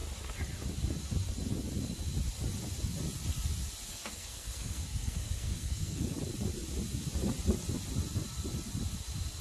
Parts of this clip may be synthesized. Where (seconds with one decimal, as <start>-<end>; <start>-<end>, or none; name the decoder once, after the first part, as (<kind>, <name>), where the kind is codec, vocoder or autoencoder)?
3.9-6.1 (codec, SNAC)